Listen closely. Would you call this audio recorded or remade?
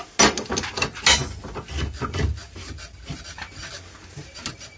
recorded